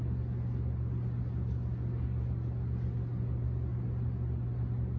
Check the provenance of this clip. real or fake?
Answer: real